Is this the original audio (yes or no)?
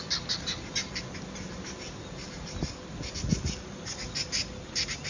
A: yes